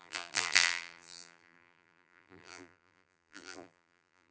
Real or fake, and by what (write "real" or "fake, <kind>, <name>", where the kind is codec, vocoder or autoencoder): fake, vocoder, BigVGAN v2